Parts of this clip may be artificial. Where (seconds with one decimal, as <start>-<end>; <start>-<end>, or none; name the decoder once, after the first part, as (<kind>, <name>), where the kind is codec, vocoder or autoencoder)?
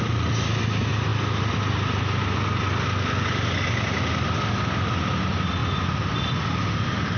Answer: none